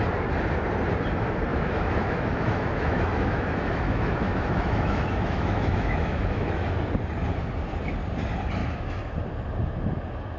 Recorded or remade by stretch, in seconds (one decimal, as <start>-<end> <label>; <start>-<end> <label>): 0.0-1.5 recorded; 1.5-6.7 remade; 6.7-8.6 recorded; 8.6-9.1 remade; 9.1-10.4 recorded